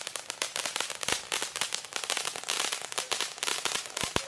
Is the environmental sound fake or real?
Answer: real